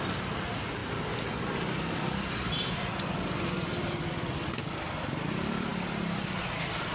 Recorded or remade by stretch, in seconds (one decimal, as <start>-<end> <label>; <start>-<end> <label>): 0.0-5.7 remade; 5.7-6.4 recorded; 6.4-6.9 remade